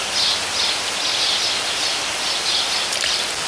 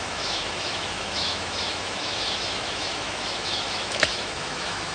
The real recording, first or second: first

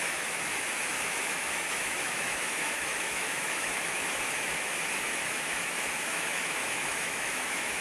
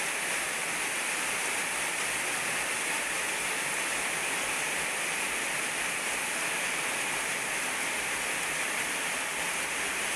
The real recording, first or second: second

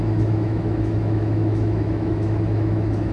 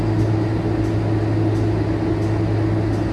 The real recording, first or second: second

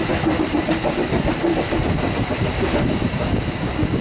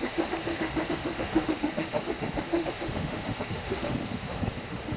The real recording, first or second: first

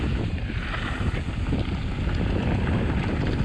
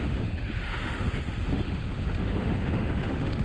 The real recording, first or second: first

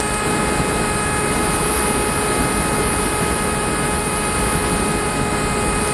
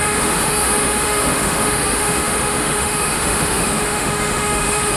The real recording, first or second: first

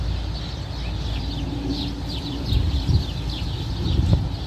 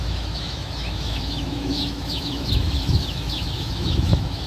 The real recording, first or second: first